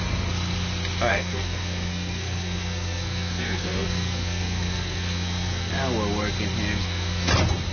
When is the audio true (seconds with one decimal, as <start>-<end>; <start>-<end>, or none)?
0.0-1.1; 5.7-6.8; 7.3-7.7

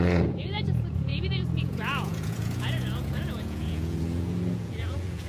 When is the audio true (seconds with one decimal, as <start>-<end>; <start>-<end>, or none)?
none

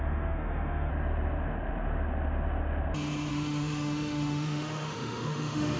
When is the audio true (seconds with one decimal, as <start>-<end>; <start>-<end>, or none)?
0.9-3.3